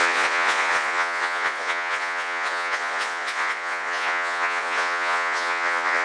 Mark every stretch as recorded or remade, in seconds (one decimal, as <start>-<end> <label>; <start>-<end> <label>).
0.0-6.0 remade